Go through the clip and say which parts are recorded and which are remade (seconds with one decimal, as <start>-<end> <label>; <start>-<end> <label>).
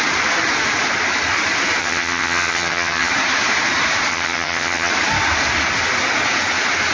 0.0-1.8 recorded; 1.8-3.1 remade; 3.1-4.1 recorded; 4.1-4.9 remade; 4.9-6.9 recorded